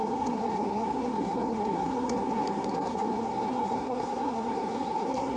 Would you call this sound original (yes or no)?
no